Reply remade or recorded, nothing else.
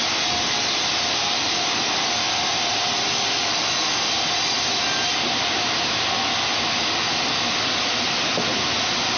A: recorded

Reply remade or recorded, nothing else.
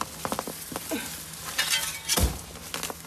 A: recorded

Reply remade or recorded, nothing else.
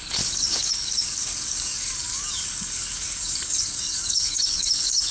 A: remade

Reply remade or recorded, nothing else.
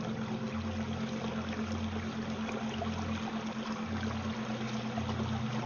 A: recorded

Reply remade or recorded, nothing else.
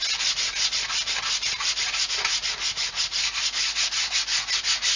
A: recorded